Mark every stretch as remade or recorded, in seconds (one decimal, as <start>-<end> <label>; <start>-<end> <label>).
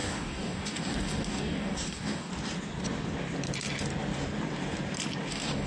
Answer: 0.0-2.3 remade; 2.3-5.3 recorded; 5.3-5.7 remade